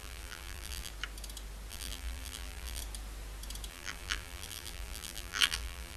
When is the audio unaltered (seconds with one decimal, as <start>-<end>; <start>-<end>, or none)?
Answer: 0.9-1.7; 2.8-3.7